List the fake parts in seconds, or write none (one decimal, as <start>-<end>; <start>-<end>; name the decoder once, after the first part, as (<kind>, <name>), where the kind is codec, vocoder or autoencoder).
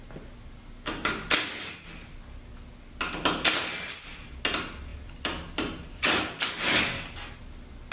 4.9-6.5 (vocoder, BigVGAN v2)